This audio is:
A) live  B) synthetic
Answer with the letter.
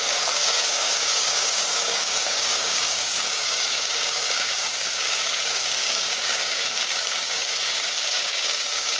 B